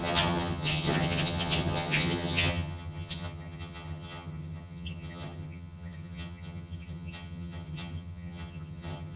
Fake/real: fake